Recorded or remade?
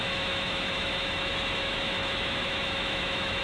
remade